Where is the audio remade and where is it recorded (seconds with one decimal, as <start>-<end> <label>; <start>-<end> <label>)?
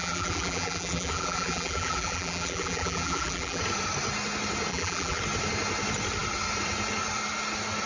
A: 0.0-3.6 remade; 3.6-4.7 recorded; 4.7-5.2 remade; 5.2-7.9 recorded